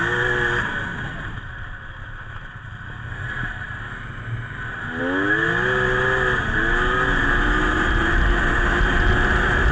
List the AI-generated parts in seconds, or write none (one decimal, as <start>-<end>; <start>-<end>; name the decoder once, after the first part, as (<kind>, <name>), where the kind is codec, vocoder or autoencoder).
none